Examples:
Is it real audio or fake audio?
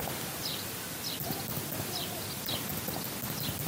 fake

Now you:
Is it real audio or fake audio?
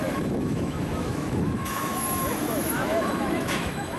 fake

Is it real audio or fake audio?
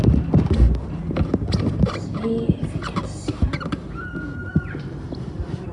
real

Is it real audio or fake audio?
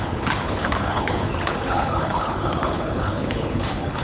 fake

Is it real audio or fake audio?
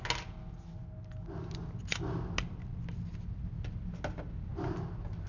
real